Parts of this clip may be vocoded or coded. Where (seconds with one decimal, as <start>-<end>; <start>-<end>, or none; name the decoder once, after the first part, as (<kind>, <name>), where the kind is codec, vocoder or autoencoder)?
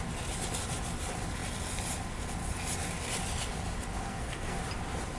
4.0-4.6 (codec, SNAC)